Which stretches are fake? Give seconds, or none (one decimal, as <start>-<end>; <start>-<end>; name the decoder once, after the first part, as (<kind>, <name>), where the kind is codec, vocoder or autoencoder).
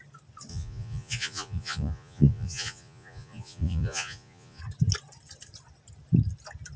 0.5-4.6 (vocoder, Vocos)